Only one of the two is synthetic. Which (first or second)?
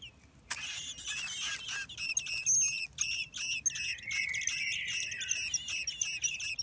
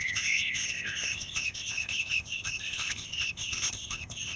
second